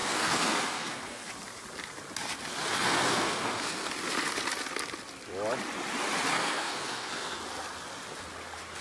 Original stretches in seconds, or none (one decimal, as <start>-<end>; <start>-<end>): 1.3-2.7; 3.9-6.3; 7.4-8.8